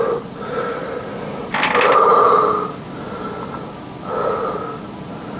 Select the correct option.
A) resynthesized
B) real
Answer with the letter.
B